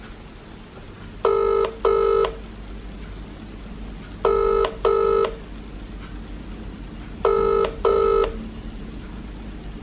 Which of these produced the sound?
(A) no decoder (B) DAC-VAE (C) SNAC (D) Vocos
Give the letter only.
A